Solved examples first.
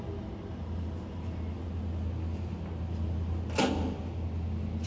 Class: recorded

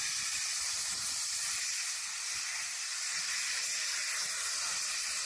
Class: recorded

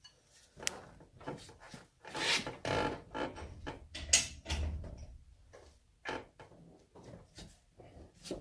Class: recorded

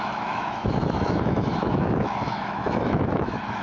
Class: remade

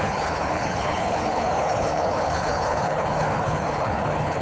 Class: remade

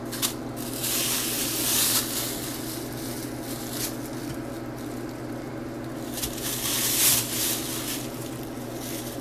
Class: recorded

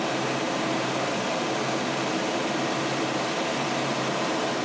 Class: remade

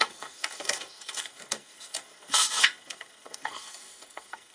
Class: remade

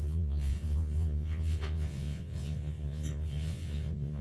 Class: remade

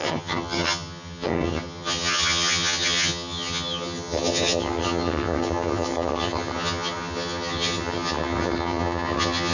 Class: remade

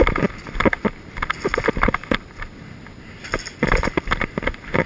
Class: recorded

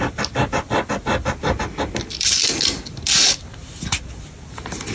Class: recorded